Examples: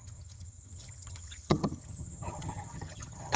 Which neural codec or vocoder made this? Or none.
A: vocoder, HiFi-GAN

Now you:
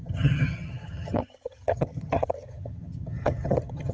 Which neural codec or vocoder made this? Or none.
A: vocoder, HiFi-GAN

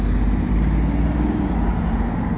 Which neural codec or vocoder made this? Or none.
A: none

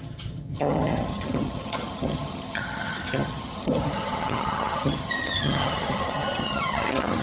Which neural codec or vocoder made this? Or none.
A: vocoder, HiFi-GAN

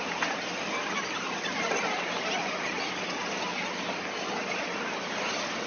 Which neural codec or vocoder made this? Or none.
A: none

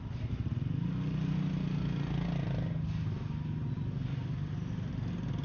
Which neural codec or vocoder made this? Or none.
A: none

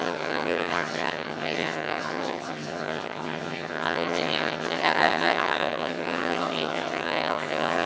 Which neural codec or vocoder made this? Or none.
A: vocoder, HiFi-GAN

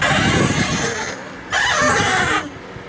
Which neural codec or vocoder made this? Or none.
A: none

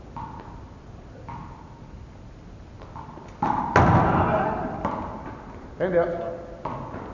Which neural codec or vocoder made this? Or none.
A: none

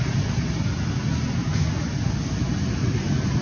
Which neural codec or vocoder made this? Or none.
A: none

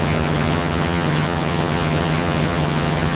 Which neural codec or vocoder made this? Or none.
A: vocoder, HiFi-GAN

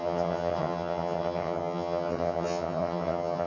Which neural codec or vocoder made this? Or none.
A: vocoder, HiFi-GAN